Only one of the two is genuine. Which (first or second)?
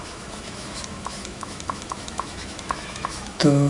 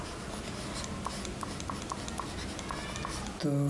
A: second